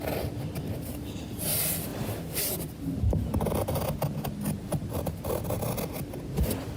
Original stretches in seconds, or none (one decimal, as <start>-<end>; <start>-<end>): 0.0-6.8